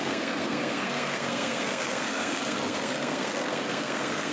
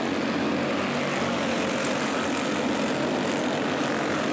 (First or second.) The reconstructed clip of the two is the first